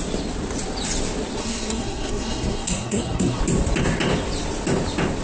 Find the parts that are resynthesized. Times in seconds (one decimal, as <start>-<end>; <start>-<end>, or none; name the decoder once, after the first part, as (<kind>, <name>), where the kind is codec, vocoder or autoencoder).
1.4-3.4 (codec, SNAC)